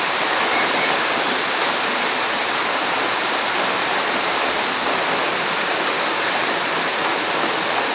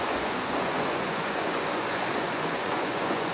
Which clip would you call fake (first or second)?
second